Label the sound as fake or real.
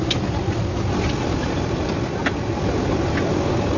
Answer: real